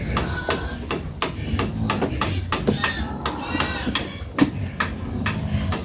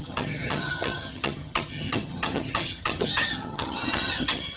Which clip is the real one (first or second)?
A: first